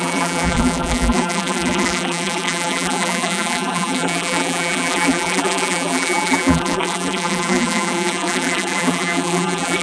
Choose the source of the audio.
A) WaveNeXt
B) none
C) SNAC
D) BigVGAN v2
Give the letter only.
D